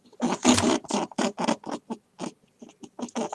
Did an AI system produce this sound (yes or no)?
no